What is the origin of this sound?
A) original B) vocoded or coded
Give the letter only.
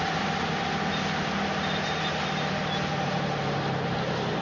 A